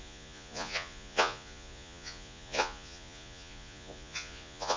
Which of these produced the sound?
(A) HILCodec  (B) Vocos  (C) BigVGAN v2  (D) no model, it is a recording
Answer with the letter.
B